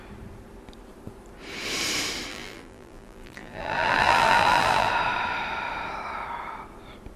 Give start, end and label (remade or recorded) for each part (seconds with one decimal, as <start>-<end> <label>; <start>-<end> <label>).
0.0-2.3 recorded; 2.3-4.9 remade; 4.9-7.2 recorded